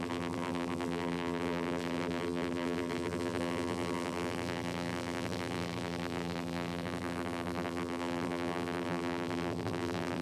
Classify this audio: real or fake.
fake